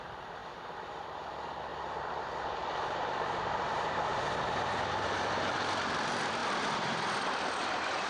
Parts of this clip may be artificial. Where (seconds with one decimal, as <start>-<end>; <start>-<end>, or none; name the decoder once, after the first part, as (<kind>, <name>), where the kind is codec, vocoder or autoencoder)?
0.0-0.4 (vocoder, BigVGAN v2); 1.2-4.1; 5.4-8.1